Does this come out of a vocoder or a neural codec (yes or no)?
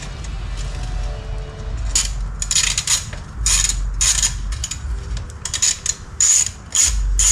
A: no